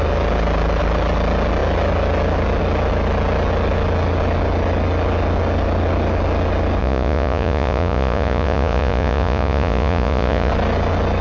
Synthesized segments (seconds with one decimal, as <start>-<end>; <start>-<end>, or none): 6.8-10.5